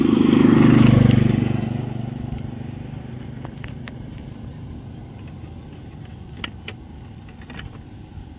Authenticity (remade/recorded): recorded